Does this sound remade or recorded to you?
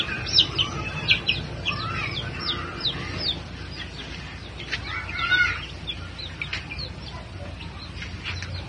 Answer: recorded